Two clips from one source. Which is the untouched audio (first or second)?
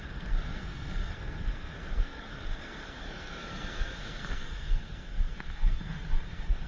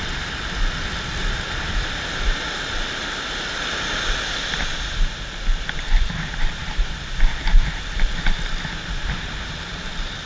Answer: second